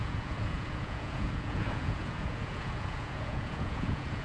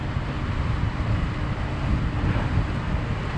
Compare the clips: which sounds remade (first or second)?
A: first